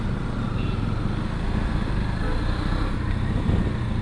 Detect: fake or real real